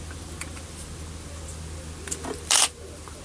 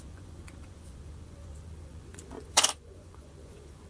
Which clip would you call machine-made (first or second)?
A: second